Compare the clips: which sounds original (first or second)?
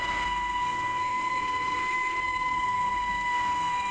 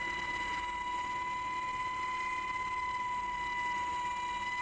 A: second